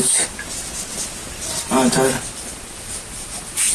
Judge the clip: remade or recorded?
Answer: recorded